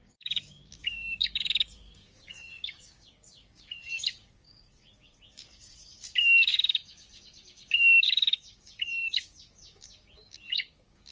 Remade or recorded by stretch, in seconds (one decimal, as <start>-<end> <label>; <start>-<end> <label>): 0.0-11.1 remade